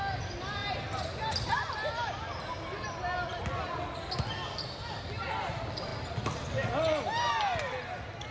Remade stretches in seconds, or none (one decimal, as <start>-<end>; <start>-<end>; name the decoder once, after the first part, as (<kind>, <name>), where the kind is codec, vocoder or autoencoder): none